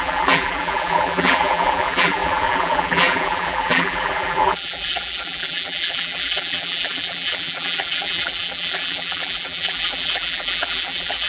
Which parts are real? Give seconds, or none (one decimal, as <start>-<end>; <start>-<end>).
none